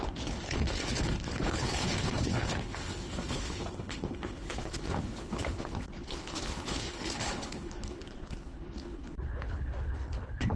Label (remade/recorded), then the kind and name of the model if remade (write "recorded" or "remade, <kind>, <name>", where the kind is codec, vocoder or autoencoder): remade, codec, HILCodec